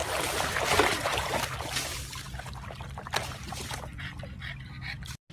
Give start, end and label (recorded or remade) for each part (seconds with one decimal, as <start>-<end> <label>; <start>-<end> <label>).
0.0-5.3 recorded